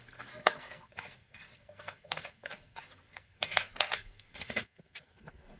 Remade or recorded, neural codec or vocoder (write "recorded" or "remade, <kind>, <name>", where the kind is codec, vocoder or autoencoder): remade, codec, SNAC